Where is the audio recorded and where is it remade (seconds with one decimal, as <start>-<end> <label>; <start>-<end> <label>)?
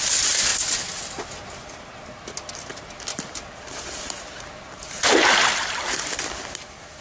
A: 0.0-3.1 recorded; 3.1-7.0 remade